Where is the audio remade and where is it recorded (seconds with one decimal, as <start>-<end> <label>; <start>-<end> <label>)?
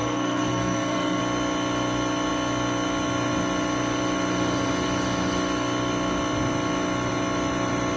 0.0-1.2 remade; 1.2-8.0 recorded